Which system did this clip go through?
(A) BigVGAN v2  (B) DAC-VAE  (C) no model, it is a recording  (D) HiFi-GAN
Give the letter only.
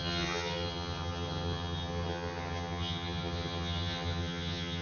D